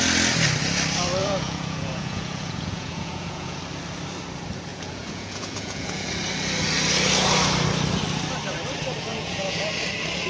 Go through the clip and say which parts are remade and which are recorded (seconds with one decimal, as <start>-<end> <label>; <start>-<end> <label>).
0.0-1.2 recorded; 1.2-3.6 remade; 3.6-4.7 recorded; 4.7-6.1 remade; 6.1-9.1 recorded; 9.1-9.7 remade; 9.7-10.3 recorded